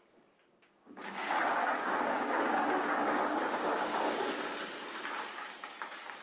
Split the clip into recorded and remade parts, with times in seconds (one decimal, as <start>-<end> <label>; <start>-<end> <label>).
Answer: 0.0-4.6 remade; 4.6-5.3 recorded; 5.3-6.2 remade